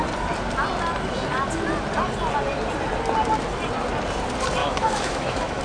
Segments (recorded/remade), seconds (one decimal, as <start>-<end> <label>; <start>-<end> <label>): 0.0-4.6 recorded; 4.6-5.6 remade